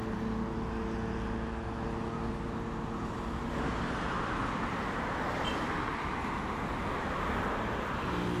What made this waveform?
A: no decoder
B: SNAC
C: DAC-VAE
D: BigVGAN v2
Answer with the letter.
A